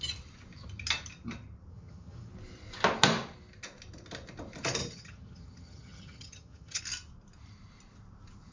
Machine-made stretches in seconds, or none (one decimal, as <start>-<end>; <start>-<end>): 1.7-2.3; 4.8-6.8